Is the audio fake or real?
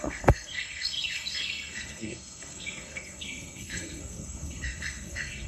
fake